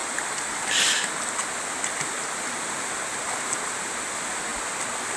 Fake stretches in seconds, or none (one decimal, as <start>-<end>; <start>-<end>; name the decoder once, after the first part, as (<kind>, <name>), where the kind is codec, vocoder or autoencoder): none